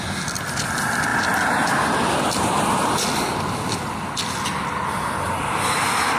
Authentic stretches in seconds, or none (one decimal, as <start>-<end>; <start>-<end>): 0.0-6.2